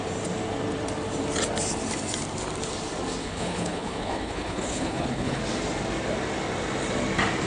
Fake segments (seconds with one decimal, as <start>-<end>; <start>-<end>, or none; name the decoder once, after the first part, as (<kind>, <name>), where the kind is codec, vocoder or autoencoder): 3.2-5.4 (codec, HILCodec)